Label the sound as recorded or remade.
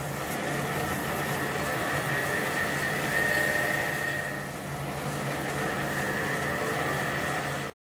recorded